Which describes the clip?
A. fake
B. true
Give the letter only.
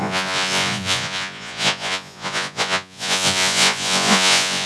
A